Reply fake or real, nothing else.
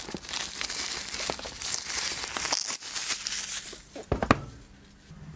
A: real